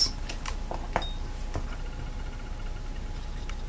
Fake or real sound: real